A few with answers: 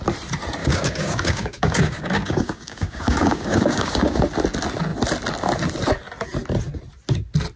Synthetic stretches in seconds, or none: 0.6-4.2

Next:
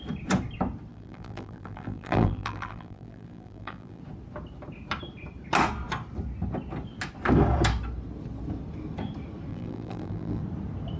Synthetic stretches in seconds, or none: 0.9-4.0; 9.5-10.4